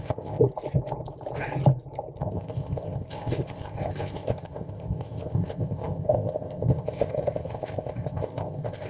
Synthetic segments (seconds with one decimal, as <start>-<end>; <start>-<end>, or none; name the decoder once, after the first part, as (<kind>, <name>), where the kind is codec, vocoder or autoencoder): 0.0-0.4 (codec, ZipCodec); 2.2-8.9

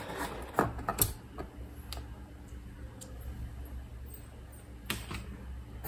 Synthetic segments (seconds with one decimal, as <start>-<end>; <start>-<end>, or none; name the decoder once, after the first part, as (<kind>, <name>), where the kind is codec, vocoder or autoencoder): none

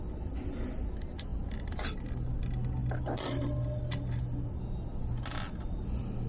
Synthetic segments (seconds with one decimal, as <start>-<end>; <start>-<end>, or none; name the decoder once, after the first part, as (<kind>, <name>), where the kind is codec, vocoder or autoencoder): 1.3-2.1 (vocoder, BigVGAN v2)

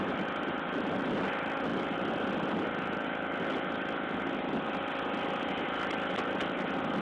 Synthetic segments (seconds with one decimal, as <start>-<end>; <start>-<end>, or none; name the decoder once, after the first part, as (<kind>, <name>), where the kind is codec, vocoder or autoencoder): none